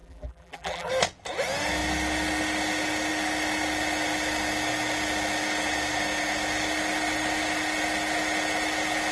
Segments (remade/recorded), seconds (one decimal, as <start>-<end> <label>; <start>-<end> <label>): 0.0-0.9 remade; 0.9-9.1 recorded